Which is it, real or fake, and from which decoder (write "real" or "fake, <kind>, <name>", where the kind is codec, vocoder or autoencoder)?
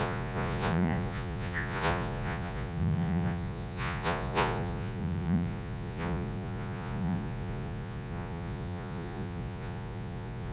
fake, vocoder, Vocos